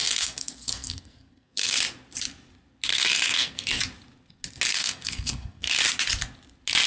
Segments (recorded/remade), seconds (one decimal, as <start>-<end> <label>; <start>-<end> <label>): 0.0-1.8 remade; 1.8-2.9 recorded; 2.9-3.8 remade; 3.8-4.7 recorded; 4.7-5.8 remade; 5.8-6.9 recorded